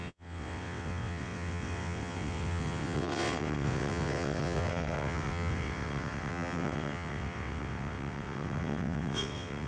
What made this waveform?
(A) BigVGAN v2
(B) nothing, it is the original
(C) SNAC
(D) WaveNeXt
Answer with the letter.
D